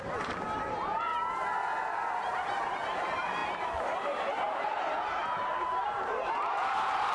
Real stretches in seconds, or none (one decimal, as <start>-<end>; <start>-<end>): 1.1-2.2